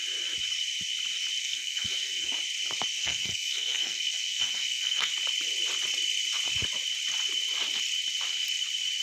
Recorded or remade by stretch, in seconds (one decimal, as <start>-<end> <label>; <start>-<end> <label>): 0.0-1.4 recorded; 1.4-2.3 remade; 2.3-3.0 recorded; 3.0-5.1 remade; 5.1-9.0 recorded